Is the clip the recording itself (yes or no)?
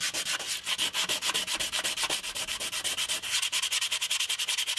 yes